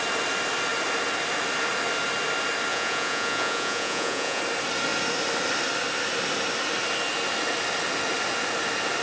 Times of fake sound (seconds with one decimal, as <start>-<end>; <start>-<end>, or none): 2.7-4.4